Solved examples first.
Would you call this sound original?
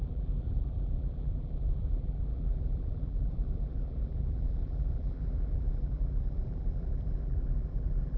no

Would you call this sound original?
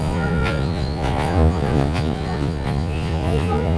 no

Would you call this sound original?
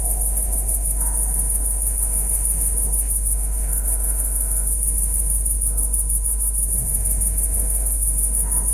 no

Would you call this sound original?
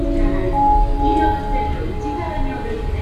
yes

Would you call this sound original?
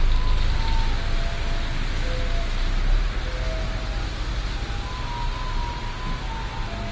yes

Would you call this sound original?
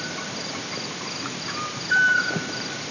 yes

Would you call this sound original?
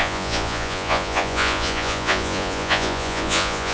no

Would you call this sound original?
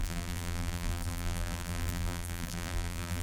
no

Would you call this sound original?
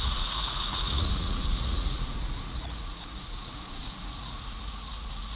no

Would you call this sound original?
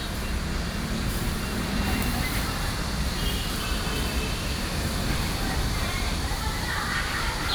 no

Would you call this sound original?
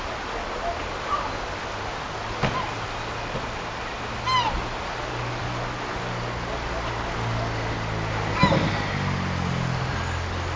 yes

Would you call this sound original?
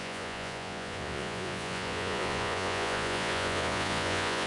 no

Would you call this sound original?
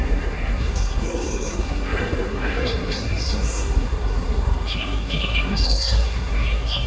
no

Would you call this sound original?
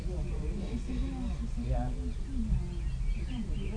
yes